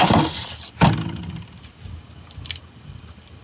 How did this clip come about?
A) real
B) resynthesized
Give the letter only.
A